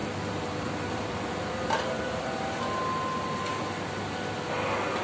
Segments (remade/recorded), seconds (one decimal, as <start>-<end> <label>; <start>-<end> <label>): 0.0-2.6 remade; 2.6-5.0 recorded

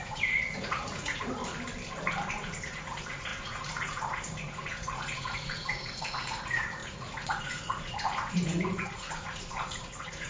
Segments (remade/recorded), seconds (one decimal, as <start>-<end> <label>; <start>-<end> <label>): 0.0-1.4 remade; 1.4-2.3 recorded; 2.3-10.3 remade

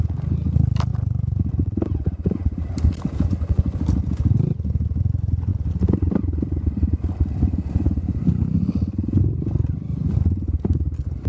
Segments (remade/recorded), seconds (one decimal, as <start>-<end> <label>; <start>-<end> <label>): 0.0-11.3 recorded

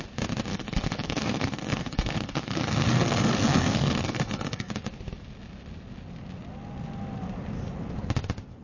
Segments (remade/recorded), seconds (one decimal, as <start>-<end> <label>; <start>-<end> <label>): 0.0-0.5 recorded; 0.5-4.7 remade; 4.7-8.6 recorded

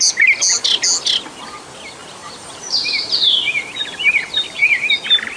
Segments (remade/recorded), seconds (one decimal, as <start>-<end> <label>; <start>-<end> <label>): 0.0-2.0 recorded; 2.0-4.9 remade; 4.9-5.4 recorded

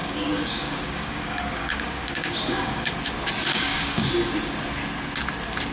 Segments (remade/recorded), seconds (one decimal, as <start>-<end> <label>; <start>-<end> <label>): 0.0-3.0 remade; 3.0-3.5 recorded; 3.5-4.1 remade; 4.1-5.7 recorded

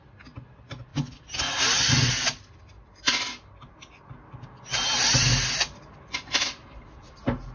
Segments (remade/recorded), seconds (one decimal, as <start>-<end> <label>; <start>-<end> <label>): 0.0-7.5 recorded

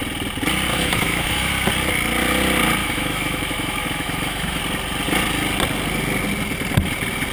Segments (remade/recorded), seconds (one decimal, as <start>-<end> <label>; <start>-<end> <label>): 0.0-0.7 recorded; 0.7-1.5 remade; 1.5-2.8 recorded; 2.8-4.6 remade; 4.6-7.3 recorded